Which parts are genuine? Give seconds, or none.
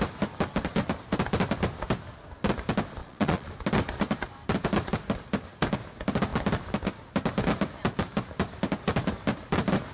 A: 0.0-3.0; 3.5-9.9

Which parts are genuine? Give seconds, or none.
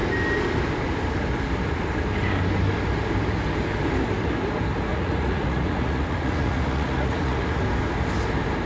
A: 0.0-4.9; 7.6-8.7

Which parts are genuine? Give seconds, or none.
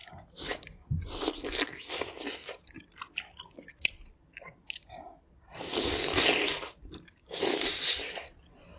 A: 0.0-8.8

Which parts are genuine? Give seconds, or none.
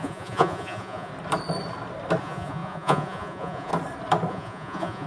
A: 1.1-2.2; 3.7-4.3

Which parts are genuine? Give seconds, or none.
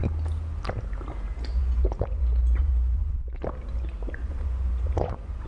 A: 0.0-1.6; 3.4-4.1